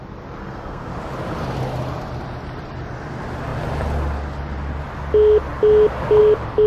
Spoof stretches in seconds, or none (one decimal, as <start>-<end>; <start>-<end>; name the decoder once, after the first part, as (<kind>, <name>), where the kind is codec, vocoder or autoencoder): 0.4-0.9 (codec, SNAC)